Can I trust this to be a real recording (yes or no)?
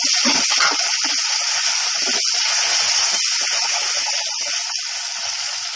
yes